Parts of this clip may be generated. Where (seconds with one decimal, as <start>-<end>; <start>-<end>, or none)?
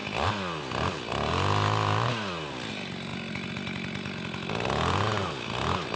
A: none